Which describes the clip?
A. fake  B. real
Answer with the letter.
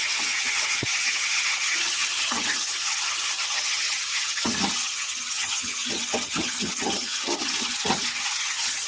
A